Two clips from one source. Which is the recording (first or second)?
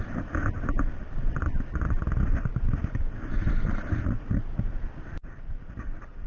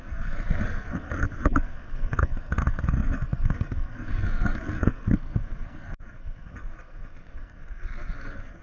first